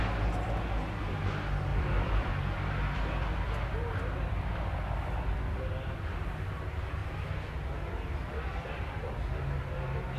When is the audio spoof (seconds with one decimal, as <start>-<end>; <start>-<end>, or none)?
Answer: 1.7-2.3

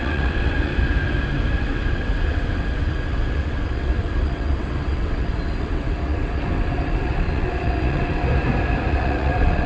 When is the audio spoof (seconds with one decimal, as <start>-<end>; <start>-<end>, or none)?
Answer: 0.0-0.7; 1.6-8.2; 8.9-9.7

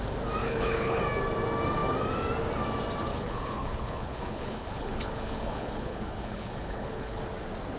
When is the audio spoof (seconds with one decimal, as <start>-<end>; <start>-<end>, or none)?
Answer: 0.4-1.0; 3.1-7.2

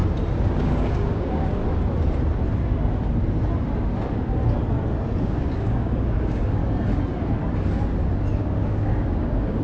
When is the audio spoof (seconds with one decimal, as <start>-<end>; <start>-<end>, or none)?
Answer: 0.6-1.6; 5.2-6.6; 8.4-9.6

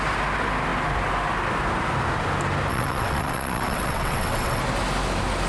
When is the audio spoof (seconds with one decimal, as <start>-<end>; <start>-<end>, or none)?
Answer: 2.7-4.6

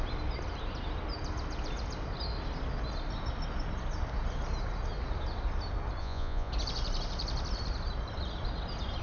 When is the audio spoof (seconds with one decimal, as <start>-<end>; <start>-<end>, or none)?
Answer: 6.0-6.5